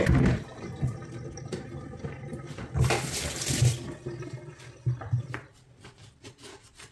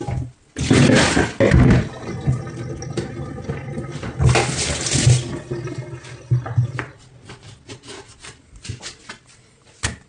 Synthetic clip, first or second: first